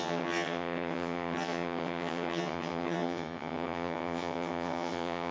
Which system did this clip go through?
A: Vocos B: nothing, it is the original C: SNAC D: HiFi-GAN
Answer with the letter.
D